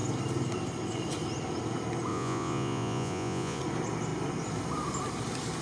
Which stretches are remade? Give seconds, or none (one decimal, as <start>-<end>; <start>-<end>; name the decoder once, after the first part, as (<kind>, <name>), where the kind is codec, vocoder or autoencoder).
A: 2.1-3.6 (vocoder, Vocos)